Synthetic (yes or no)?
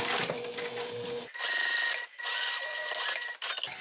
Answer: no